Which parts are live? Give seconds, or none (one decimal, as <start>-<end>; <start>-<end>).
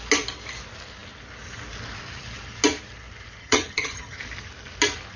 0.0-3.4; 4.2-5.2